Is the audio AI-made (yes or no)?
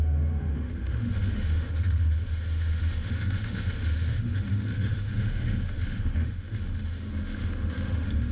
yes